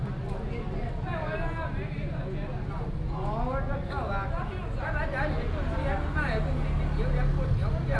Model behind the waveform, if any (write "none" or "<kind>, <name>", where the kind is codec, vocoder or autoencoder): none